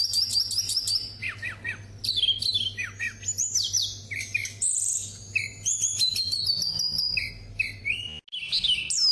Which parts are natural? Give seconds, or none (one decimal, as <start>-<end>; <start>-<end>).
0.0-9.1